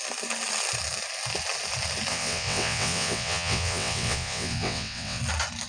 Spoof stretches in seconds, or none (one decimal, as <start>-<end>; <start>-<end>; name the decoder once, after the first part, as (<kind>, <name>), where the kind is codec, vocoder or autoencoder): 2.1-5.2 (vocoder, WaveNeXt)